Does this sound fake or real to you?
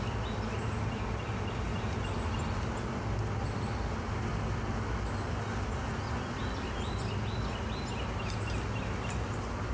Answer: real